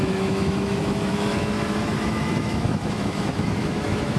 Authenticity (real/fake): fake